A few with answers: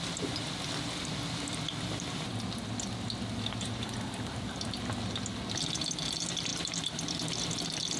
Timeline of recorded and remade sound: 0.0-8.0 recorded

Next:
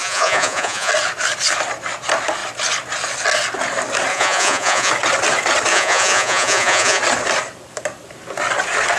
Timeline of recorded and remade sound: 0.0-0.9 remade; 0.9-4.1 recorded; 4.1-4.9 remade; 4.9-5.7 recorded; 5.7-7.0 remade; 7.0-9.0 recorded

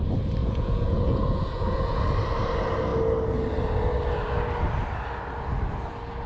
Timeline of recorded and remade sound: 0.0-0.4 recorded; 0.4-2.0 remade; 2.0-6.3 recorded

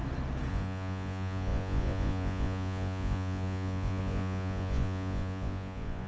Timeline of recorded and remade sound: 0.0-0.5 recorded; 0.5-6.1 remade

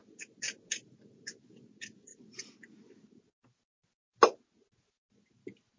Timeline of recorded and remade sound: 0.0-5.8 recorded

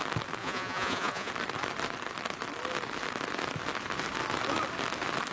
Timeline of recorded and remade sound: 0.0-0.4 recorded; 0.4-1.3 remade; 1.3-5.3 recorded

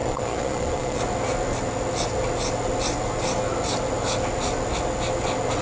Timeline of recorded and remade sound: 0.0-1.0 remade; 1.0-5.6 recorded

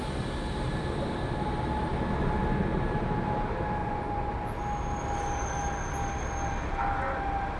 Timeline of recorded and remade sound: 0.0-3.8 recorded; 3.8-4.3 remade; 4.3-7.6 recorded